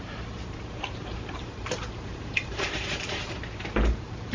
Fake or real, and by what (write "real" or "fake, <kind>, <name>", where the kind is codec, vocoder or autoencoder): fake, vocoder, BigVGAN v2